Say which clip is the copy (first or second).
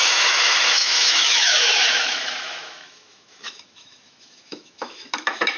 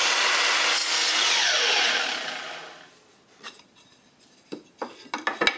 first